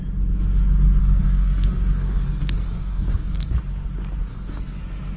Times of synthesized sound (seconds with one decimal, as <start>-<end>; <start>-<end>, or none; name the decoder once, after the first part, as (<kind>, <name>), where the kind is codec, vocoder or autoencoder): 1.0-3.5 (codec, SNAC); 4.3-4.8